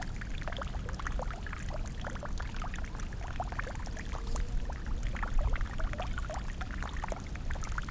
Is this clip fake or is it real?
real